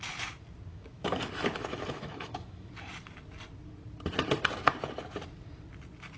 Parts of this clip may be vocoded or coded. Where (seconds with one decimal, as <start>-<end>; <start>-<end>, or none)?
0.7-1.2; 1.7-2.7